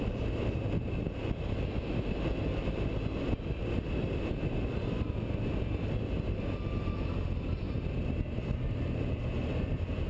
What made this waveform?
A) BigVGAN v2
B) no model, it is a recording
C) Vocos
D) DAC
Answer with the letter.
A